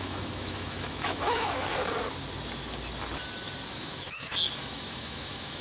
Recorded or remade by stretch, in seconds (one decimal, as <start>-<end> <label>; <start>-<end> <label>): 0.0-1.7 remade; 1.7-3.7 recorded; 3.7-5.6 remade